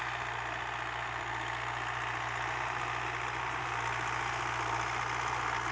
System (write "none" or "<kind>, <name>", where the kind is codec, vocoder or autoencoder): none